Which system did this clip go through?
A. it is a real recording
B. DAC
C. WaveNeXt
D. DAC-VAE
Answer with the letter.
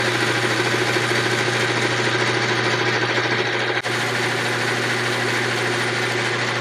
A